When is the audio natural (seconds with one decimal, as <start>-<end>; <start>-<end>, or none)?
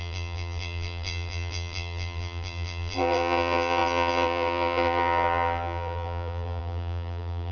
none